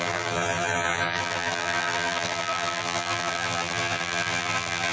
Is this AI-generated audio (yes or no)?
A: yes